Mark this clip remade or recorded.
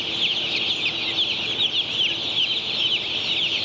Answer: remade